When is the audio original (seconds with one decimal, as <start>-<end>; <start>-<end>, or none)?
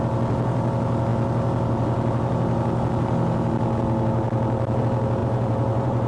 0.0-5.2